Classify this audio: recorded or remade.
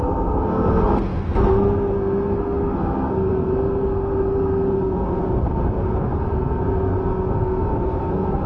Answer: remade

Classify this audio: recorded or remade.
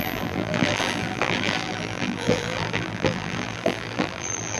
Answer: remade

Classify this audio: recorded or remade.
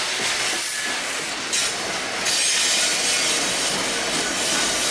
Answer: recorded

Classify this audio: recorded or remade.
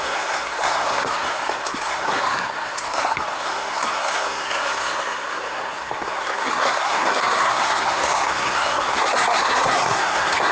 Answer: remade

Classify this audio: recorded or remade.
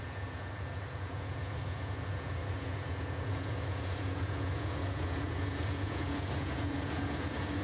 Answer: remade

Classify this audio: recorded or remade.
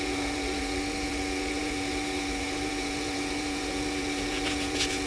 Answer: remade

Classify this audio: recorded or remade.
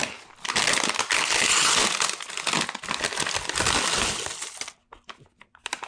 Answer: recorded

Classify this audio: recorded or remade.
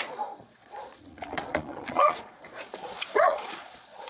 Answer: remade